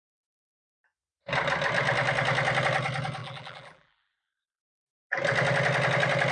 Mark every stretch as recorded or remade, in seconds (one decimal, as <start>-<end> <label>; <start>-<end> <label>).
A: 0.0-3.2 recorded; 3.2-4.6 remade; 4.6-6.3 recorded